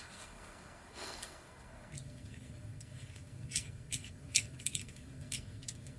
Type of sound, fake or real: fake